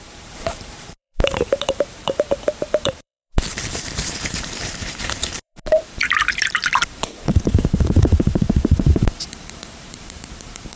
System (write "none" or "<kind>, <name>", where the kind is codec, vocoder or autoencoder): vocoder, BigVGAN v2